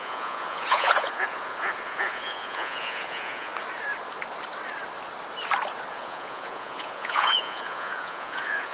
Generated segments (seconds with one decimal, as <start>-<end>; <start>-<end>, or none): 0.0-3.5; 5.9-8.7